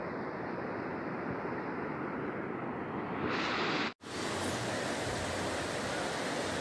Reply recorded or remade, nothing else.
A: recorded